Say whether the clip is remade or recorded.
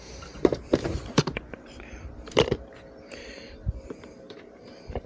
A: remade